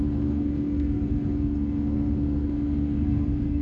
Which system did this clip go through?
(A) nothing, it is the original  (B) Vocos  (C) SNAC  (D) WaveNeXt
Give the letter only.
C